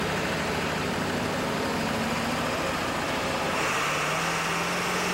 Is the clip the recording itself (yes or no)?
yes